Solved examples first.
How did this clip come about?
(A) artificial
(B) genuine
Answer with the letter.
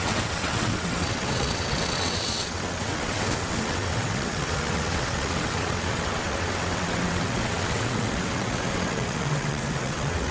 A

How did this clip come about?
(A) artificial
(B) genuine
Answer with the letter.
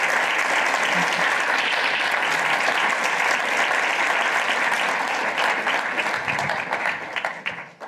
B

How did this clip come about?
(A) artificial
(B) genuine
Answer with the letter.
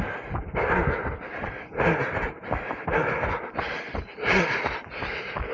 B